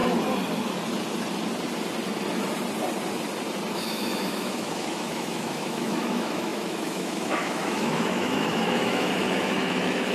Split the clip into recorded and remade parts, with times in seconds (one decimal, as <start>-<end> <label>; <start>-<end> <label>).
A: 0.0-3.7 recorded; 3.7-10.1 remade